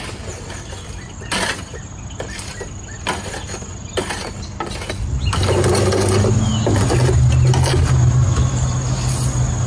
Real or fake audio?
real